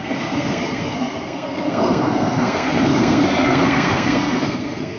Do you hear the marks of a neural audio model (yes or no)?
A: yes